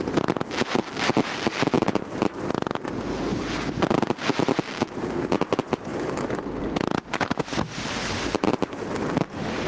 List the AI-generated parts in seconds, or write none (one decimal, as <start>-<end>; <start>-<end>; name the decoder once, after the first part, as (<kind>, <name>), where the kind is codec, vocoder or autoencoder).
none